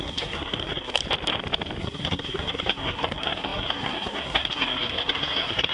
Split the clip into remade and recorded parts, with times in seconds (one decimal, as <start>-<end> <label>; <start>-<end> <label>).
0.0-1.0 remade; 1.0-1.8 recorded; 1.8-5.7 remade

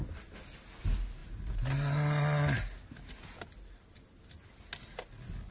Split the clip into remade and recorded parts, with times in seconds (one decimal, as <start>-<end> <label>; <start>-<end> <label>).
0.0-5.5 recorded

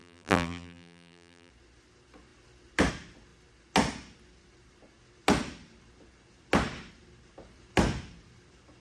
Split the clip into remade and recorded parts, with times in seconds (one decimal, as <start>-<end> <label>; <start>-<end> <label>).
0.0-1.5 remade; 1.5-8.8 recorded

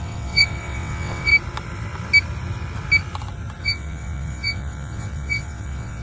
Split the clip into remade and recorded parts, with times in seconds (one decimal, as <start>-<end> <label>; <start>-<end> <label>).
0.0-1.3 remade; 1.3-3.6 recorded; 3.6-6.0 remade

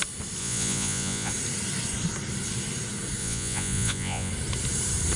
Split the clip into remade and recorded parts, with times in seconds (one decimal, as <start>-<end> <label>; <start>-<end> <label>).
0.0-0.4 recorded; 0.4-1.3 remade; 1.3-3.2 recorded; 3.2-4.3 remade; 4.3-5.2 recorded